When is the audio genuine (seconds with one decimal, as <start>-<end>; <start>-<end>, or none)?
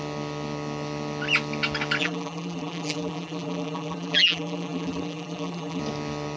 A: 0.0-2.0; 5.8-6.4